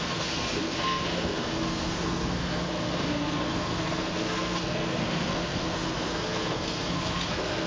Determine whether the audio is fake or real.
fake